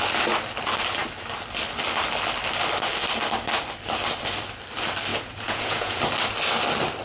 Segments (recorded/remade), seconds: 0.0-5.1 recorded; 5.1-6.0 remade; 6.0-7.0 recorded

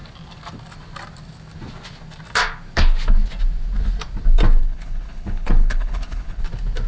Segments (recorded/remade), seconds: 0.0-4.6 recorded; 4.6-6.4 remade; 6.4-6.9 recorded

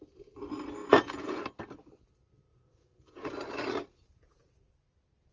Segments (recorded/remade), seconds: 0.0-0.8 recorded; 0.8-1.4 remade; 1.4-2.5 recorded; 2.5-3.3 remade; 3.3-5.3 recorded